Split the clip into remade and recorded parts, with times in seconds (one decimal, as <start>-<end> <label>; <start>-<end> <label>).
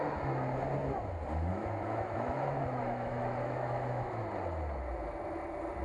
0.0-1.5 recorded; 1.5-4.2 remade; 4.2-5.8 recorded